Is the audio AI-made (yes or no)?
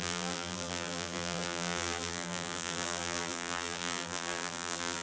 yes